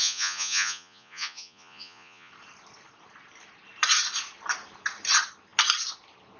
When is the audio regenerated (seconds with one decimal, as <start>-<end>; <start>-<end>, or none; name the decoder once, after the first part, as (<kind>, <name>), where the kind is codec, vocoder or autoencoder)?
0.0-2.3 (vocoder, Vocos)